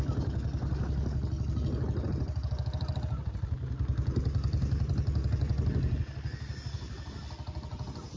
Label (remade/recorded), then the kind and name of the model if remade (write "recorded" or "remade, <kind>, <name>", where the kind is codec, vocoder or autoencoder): recorded